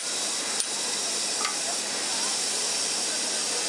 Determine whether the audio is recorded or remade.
remade